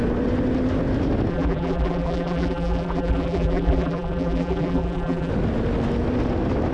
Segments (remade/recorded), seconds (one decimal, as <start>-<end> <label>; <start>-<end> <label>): 0.0-1.3 recorded; 1.3-5.3 remade; 5.3-6.7 recorded